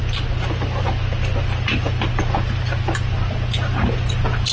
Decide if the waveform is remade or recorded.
recorded